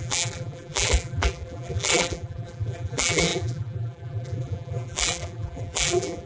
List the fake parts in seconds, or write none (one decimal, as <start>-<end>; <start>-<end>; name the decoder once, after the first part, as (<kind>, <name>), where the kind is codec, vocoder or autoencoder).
0.0-6.3 (vocoder, BigVGAN v2)